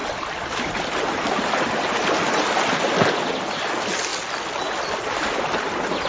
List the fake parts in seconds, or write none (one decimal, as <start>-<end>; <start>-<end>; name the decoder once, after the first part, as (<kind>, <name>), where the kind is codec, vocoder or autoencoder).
none